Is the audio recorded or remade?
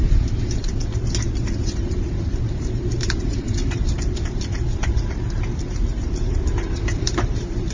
remade